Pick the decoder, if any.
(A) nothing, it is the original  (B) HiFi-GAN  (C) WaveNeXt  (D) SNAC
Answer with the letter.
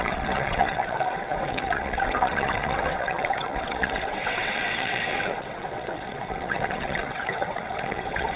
C